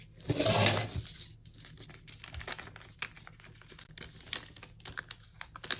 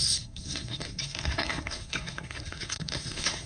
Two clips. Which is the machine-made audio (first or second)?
second